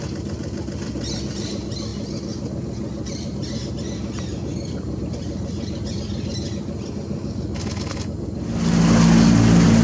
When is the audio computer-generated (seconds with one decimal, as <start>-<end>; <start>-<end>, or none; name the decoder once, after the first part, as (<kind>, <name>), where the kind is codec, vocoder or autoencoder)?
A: none